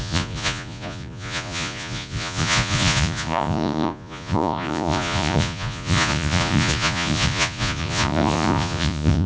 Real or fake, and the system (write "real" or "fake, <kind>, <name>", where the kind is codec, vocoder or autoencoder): fake, vocoder, Vocos